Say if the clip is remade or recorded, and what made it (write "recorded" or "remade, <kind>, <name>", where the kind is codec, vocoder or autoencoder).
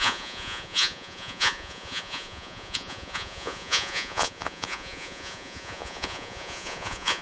remade, vocoder, Vocos